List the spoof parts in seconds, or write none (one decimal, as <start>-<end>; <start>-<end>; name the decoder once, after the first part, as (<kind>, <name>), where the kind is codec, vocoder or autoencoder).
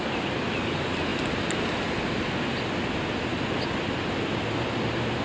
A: none